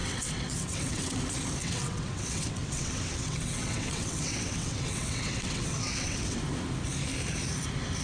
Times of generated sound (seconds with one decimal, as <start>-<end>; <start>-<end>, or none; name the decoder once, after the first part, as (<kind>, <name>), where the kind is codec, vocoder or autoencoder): 0.0-1.2 (vocoder, WaveNeXt); 1.6-6.4

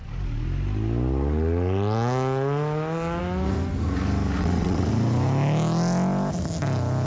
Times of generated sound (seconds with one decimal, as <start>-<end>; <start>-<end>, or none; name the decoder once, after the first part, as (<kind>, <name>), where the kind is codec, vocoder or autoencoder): 4.4-4.9 (vocoder, WaveNeXt)

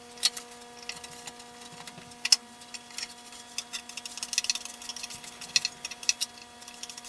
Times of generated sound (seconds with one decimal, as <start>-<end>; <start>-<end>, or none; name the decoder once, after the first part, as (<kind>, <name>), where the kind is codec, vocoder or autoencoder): none

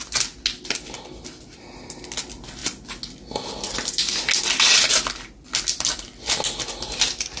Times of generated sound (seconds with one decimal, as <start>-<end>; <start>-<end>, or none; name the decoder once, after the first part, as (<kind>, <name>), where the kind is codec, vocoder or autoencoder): none

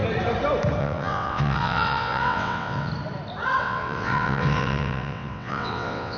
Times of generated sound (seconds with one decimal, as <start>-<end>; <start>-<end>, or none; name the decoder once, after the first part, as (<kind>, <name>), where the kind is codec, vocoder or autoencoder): 0.8-2.9 (vocoder, WaveNeXt); 3.6-6.2

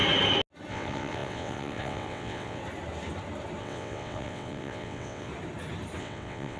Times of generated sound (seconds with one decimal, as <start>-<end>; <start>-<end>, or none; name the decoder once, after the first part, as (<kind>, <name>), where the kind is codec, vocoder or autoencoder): 0.7-2.6 (vocoder, WaveNeXt); 3.6-5.3; 6.0-6.6

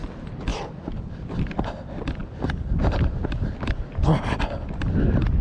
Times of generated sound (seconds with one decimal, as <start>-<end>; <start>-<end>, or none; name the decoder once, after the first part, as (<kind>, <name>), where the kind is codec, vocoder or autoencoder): none

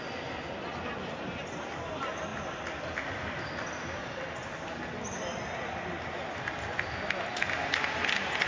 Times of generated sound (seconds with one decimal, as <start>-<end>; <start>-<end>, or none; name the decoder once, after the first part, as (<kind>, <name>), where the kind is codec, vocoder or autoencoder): none